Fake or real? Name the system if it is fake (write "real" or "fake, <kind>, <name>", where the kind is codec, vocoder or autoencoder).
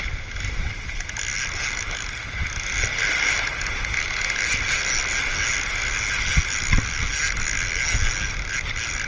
real